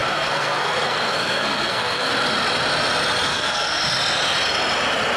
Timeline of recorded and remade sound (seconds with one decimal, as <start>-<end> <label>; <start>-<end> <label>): 0.0-2.1 remade; 2.1-3.3 recorded; 3.3-3.8 remade; 3.8-5.2 recorded